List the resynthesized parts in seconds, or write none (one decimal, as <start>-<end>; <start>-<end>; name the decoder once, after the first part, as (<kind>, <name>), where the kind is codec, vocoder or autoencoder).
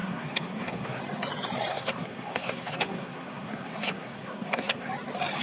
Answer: 0.0-1.0 (codec, SNAC); 1.7-4.9